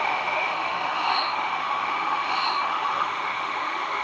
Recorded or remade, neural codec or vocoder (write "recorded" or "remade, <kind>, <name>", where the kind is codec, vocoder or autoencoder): remade, autoencoder, DAC-VAE